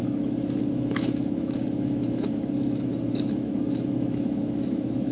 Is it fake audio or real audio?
fake